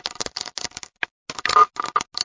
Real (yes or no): yes